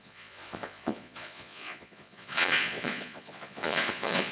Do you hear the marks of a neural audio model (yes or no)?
yes